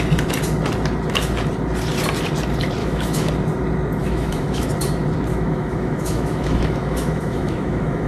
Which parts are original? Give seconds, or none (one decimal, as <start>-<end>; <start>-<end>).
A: 0.0-2.8; 3.3-4.0; 4.7-5.3